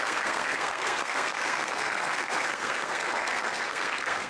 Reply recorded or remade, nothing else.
remade